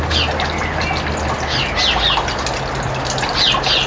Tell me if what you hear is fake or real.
real